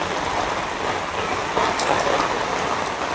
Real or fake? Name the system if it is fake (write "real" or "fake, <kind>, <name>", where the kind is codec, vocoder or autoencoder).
real